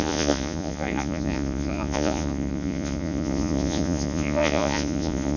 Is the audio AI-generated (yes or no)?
yes